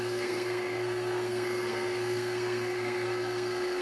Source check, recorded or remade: remade